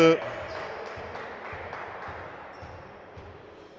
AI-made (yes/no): no